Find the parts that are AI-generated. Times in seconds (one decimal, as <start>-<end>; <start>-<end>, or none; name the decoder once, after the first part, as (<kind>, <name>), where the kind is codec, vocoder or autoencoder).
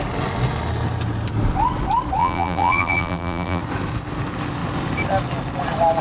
2.2-3.6 (vocoder, BigVGAN v2)